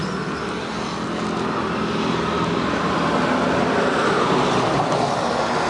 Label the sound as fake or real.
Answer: real